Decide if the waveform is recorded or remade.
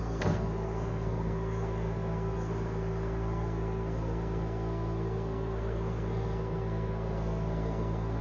remade